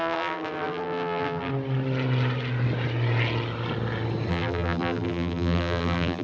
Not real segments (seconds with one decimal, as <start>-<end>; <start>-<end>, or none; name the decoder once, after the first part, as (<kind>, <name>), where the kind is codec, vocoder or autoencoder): 0.0-1.5 (vocoder, BigVGAN v2); 4.3-6.2